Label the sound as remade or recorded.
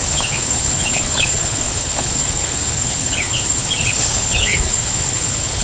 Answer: remade